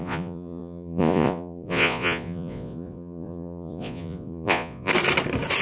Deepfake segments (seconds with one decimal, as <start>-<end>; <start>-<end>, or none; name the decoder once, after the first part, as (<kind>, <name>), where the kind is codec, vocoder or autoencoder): 0.0-4.9 (vocoder, Vocos)